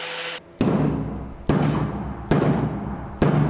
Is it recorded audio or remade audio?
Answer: recorded